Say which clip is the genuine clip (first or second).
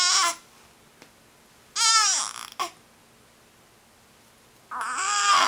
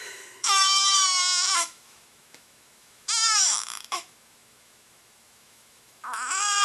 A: first